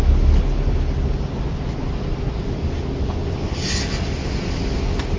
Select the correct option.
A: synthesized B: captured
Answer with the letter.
B